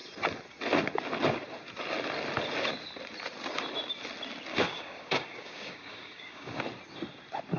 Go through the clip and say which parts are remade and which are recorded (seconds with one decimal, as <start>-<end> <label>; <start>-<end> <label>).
0.0-4.5 recorded; 4.5-6.6 remade; 6.6-7.6 recorded